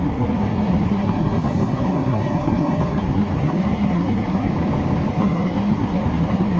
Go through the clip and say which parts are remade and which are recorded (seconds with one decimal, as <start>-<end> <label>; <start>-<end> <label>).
0.0-4.5 remade; 4.5-5.1 recorded; 5.1-6.6 remade